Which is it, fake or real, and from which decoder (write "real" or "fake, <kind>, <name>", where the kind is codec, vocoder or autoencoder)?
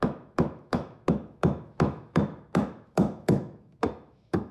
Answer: fake, autoencoder, DAC-VAE